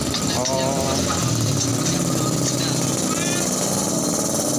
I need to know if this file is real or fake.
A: real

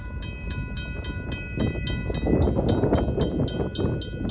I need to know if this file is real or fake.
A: real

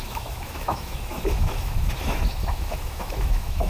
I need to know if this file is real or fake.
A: fake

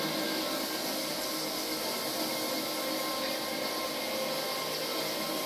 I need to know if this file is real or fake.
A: real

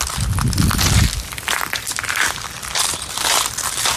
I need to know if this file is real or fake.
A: real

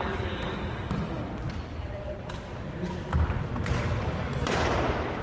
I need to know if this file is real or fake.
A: real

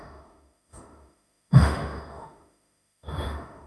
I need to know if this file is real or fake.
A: fake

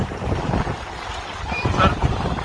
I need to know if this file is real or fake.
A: real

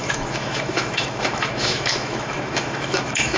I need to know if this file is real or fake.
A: fake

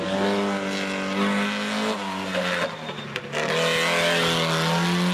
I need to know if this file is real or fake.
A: real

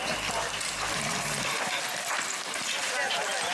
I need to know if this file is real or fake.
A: real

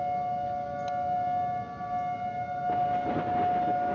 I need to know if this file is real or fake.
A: real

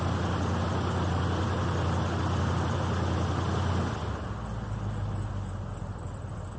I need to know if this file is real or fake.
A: real